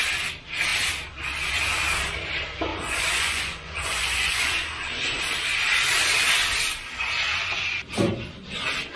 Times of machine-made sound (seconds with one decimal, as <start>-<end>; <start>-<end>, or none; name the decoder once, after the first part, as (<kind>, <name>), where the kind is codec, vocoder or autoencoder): 2.7-5.2 (vocoder, Vocos)